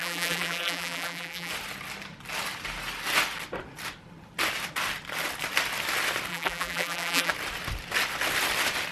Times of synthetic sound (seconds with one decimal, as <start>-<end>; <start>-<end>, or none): 0.0-1.5; 6.3-7.3